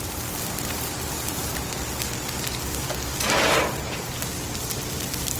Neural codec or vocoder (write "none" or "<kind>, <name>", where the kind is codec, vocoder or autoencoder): none